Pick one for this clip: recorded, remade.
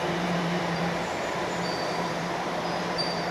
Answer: remade